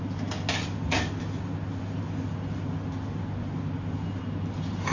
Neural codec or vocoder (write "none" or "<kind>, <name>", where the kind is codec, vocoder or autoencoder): none